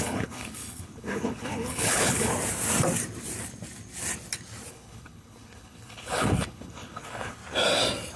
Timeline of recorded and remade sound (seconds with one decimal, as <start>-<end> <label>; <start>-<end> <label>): 0.0-2.3 remade; 2.3-4.7 recorded; 4.7-7.4 remade; 7.4-8.2 recorded